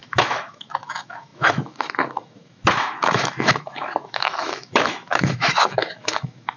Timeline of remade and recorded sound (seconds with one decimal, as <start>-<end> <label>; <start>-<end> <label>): 0.0-6.6 remade